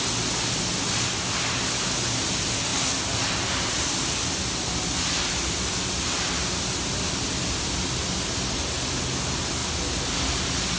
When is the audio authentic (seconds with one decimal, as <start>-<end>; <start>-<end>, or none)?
0.0-10.8